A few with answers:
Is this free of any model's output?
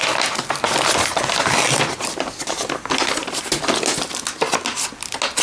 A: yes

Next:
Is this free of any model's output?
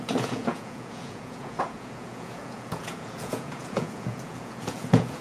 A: no